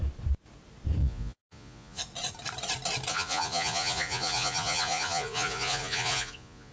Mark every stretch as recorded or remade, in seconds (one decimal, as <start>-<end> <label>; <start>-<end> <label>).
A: 0.0-1.0 recorded; 1.0-2.0 remade; 2.0-3.1 recorded; 3.1-6.7 remade